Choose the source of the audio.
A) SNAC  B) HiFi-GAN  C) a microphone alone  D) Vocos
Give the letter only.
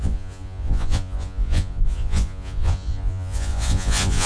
D